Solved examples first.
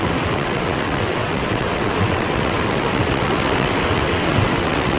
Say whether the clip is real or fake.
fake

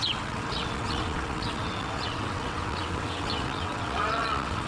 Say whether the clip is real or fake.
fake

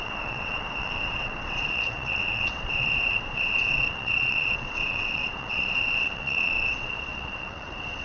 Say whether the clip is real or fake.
fake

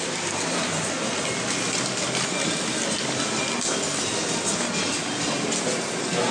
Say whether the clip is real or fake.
real